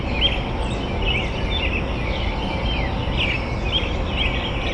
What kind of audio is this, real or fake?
real